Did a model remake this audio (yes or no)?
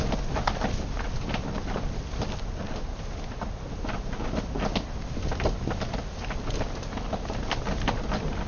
no